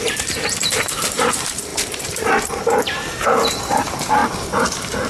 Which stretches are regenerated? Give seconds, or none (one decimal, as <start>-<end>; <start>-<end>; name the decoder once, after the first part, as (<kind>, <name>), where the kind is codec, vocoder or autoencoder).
0.0-4.2 (vocoder, BigVGAN v2)